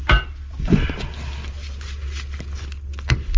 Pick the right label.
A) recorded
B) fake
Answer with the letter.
A